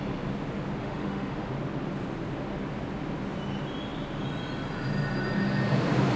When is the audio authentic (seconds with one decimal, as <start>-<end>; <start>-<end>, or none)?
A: 0.0-0.8; 1.5-6.2

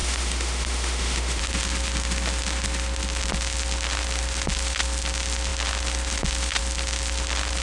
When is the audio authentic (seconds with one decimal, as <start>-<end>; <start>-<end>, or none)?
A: 1.4-7.6

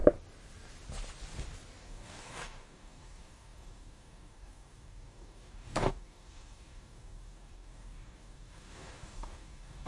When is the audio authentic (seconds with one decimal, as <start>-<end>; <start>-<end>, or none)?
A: 0.0-1.8